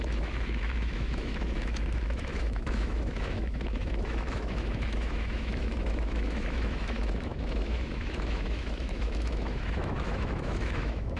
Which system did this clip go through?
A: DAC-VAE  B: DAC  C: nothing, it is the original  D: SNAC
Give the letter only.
A